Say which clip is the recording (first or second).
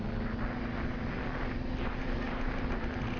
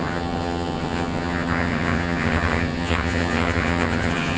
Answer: first